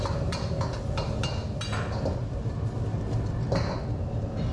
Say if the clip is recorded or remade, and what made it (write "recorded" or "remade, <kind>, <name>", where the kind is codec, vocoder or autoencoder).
recorded